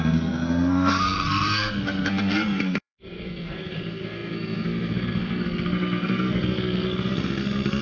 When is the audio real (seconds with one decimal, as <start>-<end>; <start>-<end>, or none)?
none

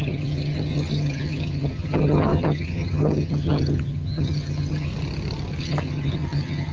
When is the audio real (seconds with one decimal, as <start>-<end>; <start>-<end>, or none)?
4.9-5.6